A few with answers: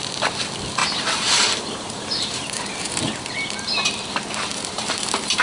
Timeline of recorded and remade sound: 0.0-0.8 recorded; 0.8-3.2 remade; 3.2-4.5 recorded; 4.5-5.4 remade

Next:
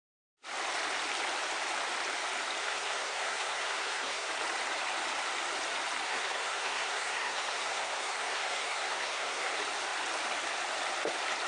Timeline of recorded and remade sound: 0.0-2.6 recorded; 2.6-4.3 remade; 4.3-6.1 recorded; 6.1-9.5 remade; 9.5-11.5 recorded

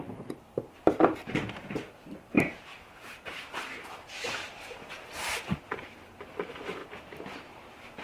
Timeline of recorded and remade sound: 0.0-6.8 remade; 6.8-7.5 recorded; 7.5-8.0 remade

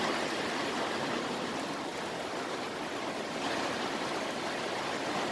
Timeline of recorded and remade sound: 0.0-5.3 recorded

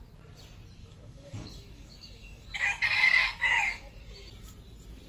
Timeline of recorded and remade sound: 0.0-0.8 recorded; 0.8-3.9 remade; 3.9-5.1 recorded

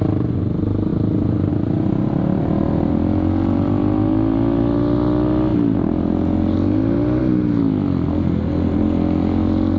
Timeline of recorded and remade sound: 0.0-9.8 recorded

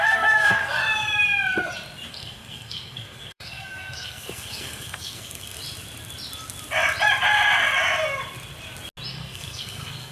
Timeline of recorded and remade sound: 0.0-0.8 remade; 0.8-2.1 recorded; 2.1-5.6 remade; 5.6-9.1 recorded; 9.1-10.1 remade

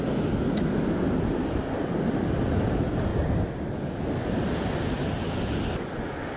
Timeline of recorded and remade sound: 0.0-6.4 recorded